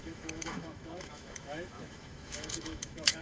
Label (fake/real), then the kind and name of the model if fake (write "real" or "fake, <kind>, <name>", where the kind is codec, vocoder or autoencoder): fake, autoencoder, DAC-VAE